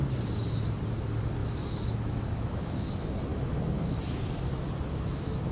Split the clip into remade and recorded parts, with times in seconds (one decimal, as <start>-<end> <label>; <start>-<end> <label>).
0.0-1.4 recorded; 1.4-2.9 remade; 2.9-3.3 recorded; 3.3-4.0 remade; 4.0-4.9 recorded; 4.9-5.5 remade